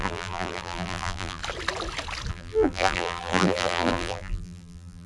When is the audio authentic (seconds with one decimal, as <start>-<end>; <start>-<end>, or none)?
1.4-2.3